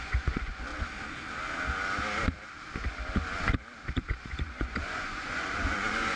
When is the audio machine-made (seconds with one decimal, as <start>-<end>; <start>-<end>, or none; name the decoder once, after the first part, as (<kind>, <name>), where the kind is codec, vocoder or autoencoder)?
0.0-0.7 (vocoder, Vocos); 4.0-6.2